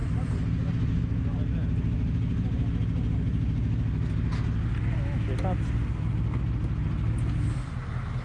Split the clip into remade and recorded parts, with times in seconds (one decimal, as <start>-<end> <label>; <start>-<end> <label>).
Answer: 0.0-8.2 recorded